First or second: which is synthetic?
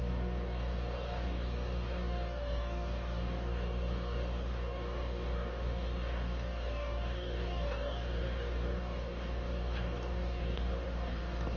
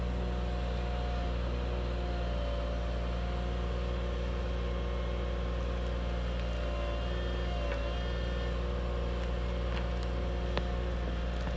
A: first